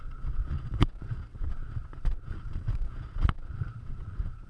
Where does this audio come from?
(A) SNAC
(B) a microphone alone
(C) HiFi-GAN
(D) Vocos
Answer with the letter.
D